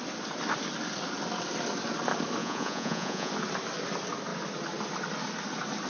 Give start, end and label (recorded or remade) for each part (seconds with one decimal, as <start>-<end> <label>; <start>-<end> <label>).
0.0-2.4 recorded; 2.4-3.3 remade; 3.3-5.9 recorded